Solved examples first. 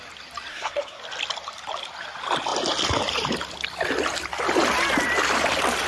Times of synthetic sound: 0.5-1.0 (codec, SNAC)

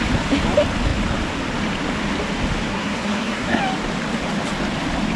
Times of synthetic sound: 2.7-3.6 (codec, SNAC)

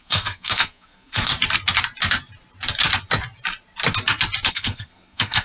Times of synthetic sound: 0.0-1.3 (codec, SNAC); 4.5-5.4

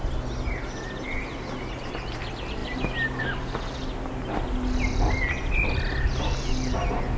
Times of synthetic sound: none

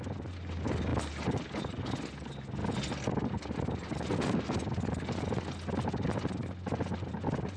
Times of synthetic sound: none

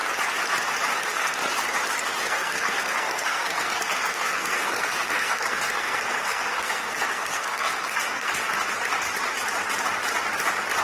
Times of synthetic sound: 1.0-1.4 (codec, SNAC); 2.2-8.4

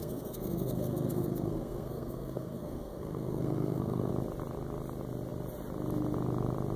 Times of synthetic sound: 0.0-4.1 (codec, SNAC)

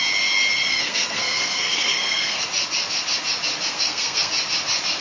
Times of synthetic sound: 0.7-2.4 (codec, SNAC); 3.7-4.3